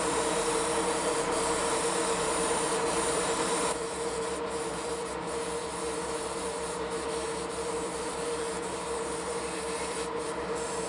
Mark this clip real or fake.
fake